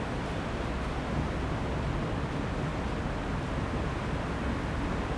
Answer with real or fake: real